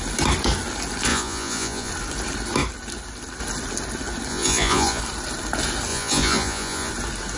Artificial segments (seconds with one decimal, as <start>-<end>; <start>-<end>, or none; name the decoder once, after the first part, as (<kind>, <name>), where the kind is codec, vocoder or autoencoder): 1.1-1.9 (vocoder, Vocos); 4.3-5.0; 5.9-6.9